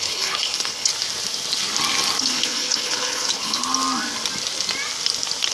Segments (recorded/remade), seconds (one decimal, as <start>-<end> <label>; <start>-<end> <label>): 0.0-0.9 remade; 0.9-2.2 recorded; 2.2-3.6 remade; 3.6-5.5 recorded